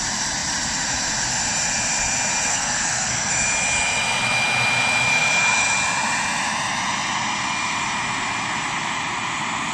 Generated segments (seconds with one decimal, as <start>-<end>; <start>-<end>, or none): 2.5-3.3